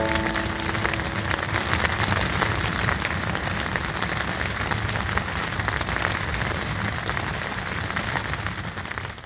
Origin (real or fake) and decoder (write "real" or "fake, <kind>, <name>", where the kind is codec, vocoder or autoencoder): real